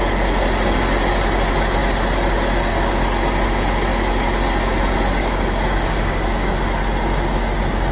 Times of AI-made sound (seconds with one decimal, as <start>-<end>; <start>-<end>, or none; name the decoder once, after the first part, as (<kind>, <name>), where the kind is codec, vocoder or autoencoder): 5.2-6.5 (codec, DAC)